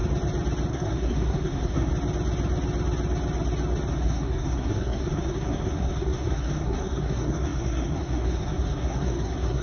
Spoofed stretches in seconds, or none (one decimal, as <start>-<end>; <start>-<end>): 0.7-1.9; 3.9-9.6